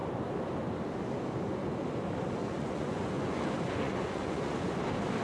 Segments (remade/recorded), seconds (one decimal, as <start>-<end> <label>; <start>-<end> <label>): 0.0-2.4 recorded; 2.4-4.7 remade; 4.7-5.2 recorded